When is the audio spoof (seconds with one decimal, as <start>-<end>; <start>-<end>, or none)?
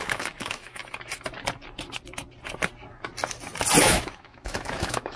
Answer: 0.0-0.8; 3.8-5.2